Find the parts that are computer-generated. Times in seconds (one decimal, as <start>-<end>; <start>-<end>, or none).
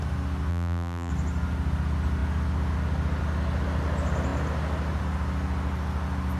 0.5-1.1